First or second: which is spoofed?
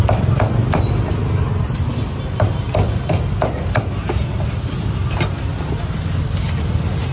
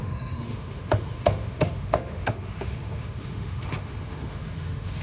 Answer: second